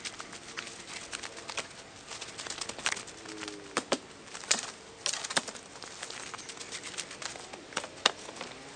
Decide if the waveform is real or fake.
real